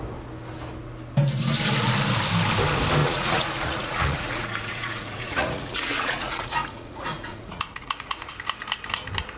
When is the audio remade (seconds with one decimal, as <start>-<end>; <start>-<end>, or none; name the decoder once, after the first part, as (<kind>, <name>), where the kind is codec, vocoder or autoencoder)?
3.0-8.3 (vocoder, Vocos)